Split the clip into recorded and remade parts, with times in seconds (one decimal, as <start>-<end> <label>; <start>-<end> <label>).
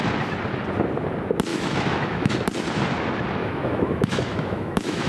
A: 0.0-1.5 recorded; 1.5-2.3 remade; 2.3-3.4 recorded; 3.4-5.1 remade